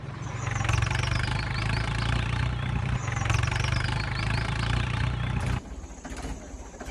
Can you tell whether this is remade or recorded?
remade